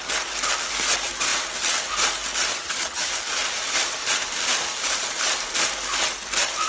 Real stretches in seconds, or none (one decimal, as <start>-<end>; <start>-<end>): 0.0-2.5; 3.1-6.7